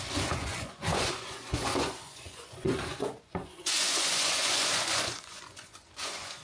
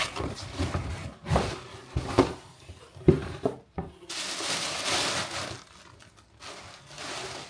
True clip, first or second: second